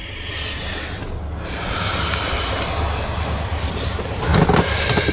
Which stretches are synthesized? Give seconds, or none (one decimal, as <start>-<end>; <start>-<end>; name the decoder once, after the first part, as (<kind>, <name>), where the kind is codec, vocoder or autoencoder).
none